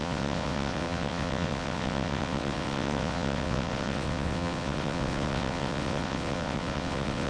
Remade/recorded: remade